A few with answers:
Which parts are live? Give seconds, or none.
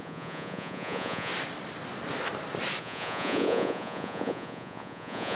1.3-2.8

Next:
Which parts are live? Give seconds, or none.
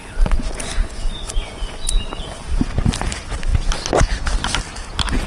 2.6-5.3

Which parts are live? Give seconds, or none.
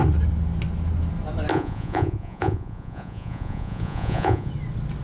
0.0-1.5; 4.5-5.0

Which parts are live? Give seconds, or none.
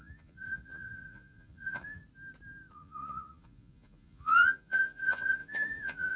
2.0-2.7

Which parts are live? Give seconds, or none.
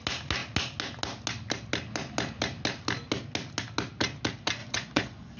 0.0-4.6